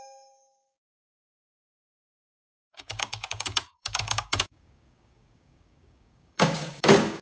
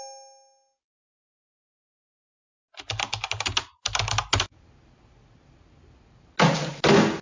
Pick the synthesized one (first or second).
first